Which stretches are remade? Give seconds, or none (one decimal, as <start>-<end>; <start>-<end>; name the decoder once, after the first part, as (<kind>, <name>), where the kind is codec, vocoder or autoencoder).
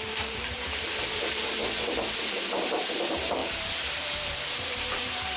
0.0-1.6 (vocoder, BigVGAN v2); 2.3-5.4